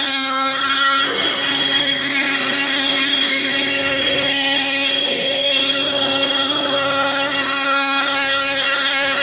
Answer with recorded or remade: remade